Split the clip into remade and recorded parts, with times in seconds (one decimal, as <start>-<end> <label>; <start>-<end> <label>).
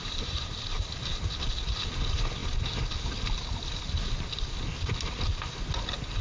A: 0.0-1.3 remade; 1.3-6.2 recorded